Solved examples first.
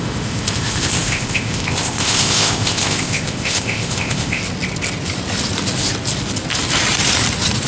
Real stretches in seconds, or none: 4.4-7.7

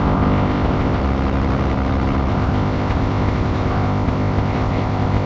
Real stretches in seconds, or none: 1.0-2.3